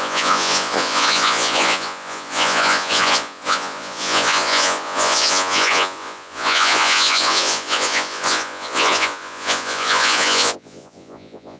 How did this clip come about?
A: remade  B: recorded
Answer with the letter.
A